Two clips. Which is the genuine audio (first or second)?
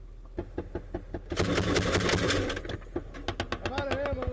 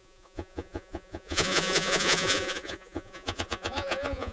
first